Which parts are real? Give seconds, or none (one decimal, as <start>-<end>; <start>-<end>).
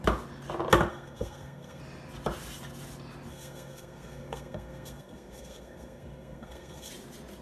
0.0-0.9; 1.8-3.3; 6.9-7.4